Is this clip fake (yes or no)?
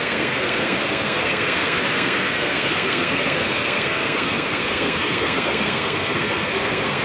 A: yes